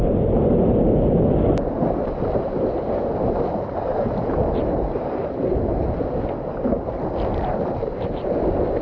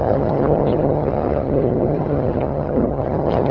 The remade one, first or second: second